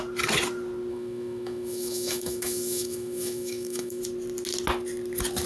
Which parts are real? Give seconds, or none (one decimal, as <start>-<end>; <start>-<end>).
0.0-0.9; 4.0-5.5